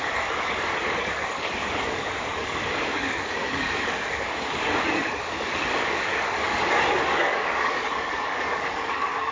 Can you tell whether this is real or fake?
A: fake